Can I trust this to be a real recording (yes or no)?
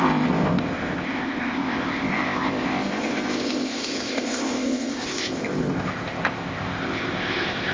no